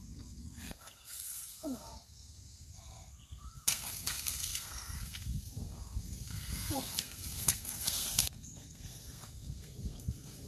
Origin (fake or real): fake